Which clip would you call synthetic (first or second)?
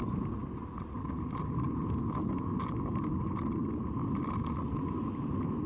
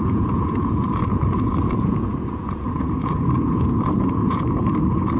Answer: second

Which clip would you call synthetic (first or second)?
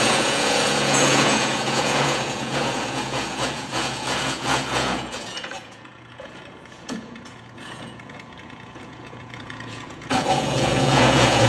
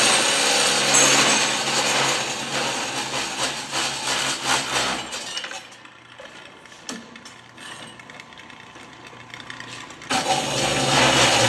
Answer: first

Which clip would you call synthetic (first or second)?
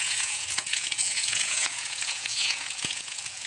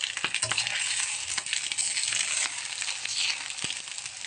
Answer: first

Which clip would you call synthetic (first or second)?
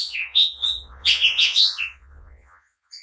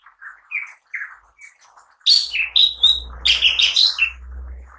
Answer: first